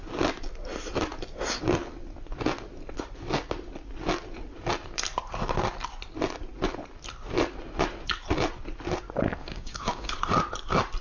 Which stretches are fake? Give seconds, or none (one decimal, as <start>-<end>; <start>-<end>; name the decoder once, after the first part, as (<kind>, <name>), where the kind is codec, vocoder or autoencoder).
9.4-10.1 (codec, DAC)